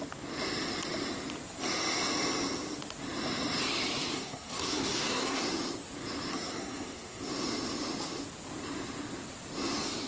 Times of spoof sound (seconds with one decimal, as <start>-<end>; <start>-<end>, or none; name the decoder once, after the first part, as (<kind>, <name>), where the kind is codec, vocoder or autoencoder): 4.1-5.4 (codec, SNAC); 6.3-7.2